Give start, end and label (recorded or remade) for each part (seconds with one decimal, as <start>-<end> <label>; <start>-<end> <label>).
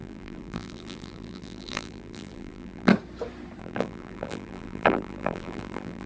0.0-2.9 remade; 2.9-3.6 recorded; 3.6-6.1 remade